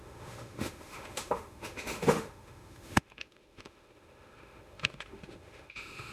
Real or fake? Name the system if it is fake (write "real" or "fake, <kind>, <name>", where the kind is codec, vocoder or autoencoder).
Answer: fake, autoencoder, DAC-VAE